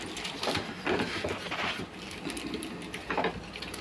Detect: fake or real real